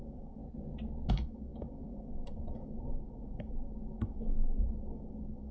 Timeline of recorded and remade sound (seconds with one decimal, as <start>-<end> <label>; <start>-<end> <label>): 0.0-0.4 remade; 0.4-1.1 recorded; 1.1-5.5 remade